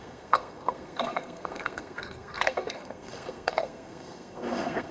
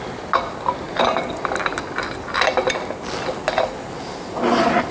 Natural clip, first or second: second